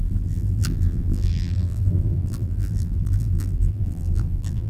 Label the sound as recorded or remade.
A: remade